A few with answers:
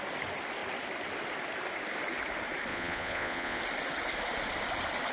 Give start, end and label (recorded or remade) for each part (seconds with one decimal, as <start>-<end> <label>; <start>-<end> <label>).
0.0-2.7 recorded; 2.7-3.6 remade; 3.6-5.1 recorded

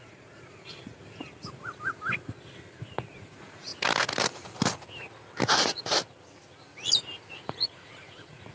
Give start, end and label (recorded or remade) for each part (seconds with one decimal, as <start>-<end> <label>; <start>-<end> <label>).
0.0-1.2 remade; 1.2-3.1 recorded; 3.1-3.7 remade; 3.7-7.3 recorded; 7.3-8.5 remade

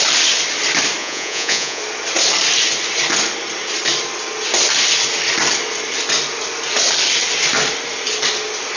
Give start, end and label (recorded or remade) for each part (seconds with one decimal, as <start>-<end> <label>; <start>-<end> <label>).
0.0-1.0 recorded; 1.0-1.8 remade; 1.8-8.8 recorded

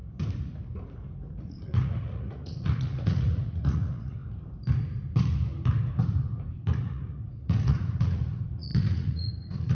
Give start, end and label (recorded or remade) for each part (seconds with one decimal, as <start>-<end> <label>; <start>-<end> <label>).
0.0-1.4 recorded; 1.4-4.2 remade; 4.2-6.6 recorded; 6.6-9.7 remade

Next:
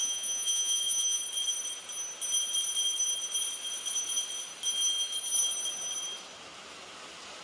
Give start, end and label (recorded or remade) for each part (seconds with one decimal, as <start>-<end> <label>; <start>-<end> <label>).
0.0-1.2 remade; 1.2-7.4 recorded

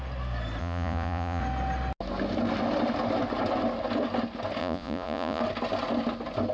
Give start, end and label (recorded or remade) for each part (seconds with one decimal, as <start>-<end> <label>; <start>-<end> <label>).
0.0-0.6 recorded; 0.6-1.4 remade; 1.4-4.6 recorded; 4.6-5.4 remade; 5.4-6.5 recorded

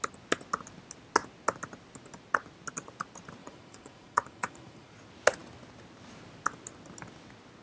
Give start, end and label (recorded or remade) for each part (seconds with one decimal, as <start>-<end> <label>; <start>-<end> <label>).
0.0-3.4 recorded; 3.4-4.9 remade; 4.9-7.6 recorded

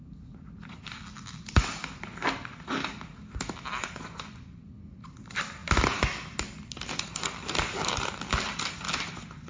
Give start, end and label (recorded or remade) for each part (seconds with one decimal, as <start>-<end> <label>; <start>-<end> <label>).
0.0-3.8 recorded; 3.8-4.6 remade; 4.6-9.5 recorded